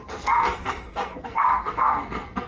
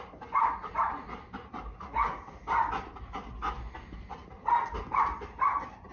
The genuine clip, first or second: second